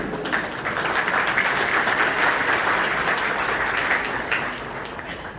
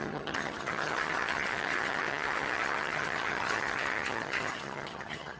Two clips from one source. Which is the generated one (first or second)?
second